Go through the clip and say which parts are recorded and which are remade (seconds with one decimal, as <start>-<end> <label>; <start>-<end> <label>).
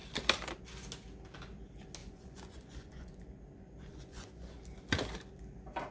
0.0-2.0 recorded; 2.0-3.2 remade; 3.2-3.9 recorded; 3.9-4.6 remade; 4.6-5.9 recorded